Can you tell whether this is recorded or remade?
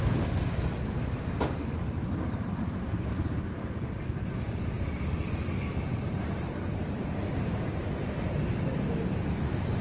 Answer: remade